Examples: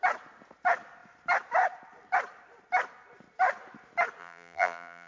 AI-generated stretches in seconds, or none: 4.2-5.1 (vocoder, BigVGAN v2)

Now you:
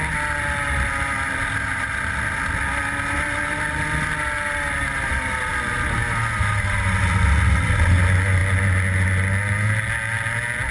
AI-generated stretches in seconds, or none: none

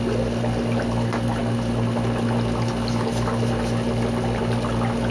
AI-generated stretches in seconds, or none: none